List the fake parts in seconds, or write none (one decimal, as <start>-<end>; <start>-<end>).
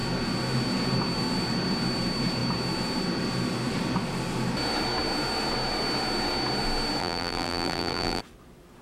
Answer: 7.0-8.2